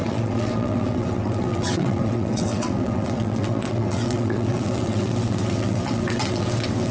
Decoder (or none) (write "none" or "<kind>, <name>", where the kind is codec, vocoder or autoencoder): vocoder, WaveNeXt